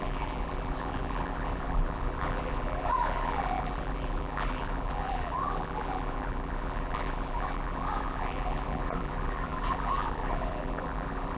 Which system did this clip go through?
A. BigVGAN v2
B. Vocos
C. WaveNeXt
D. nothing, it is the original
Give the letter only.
A